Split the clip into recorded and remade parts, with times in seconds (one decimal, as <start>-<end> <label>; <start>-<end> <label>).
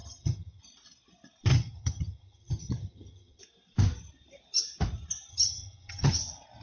0.0-0.6 remade; 0.6-1.5 recorded; 1.5-3.4 remade; 3.4-5.3 recorded; 5.3-6.1 remade; 6.1-6.6 recorded